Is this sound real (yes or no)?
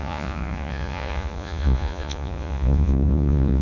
no